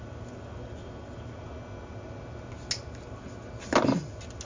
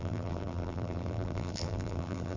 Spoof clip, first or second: second